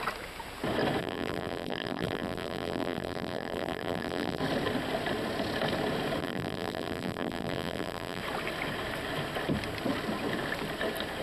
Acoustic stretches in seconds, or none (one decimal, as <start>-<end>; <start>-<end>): 0.0-1.0; 4.4-6.2; 8.2-11.2